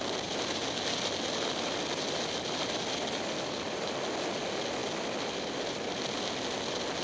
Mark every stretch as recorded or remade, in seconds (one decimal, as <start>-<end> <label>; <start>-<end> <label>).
0.0-7.0 recorded

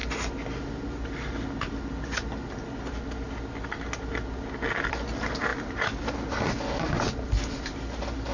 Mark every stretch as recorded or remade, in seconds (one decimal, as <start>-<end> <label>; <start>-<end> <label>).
0.0-8.3 recorded

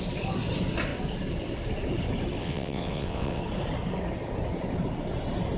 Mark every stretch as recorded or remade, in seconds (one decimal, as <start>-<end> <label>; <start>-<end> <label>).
0.0-2.4 recorded; 2.4-3.4 remade; 3.4-5.6 recorded